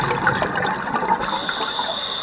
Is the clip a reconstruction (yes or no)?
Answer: no